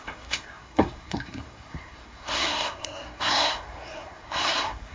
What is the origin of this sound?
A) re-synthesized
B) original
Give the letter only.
A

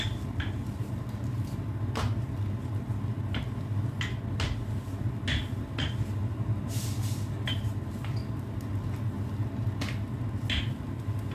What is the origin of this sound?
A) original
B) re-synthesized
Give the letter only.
A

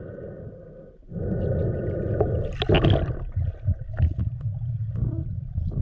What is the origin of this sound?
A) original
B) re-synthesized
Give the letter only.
A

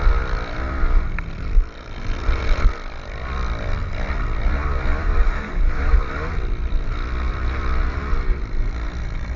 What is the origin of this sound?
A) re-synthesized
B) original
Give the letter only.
B